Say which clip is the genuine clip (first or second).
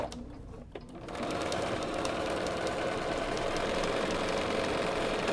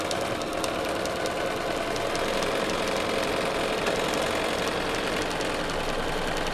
second